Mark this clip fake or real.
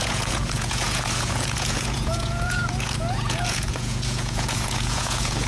fake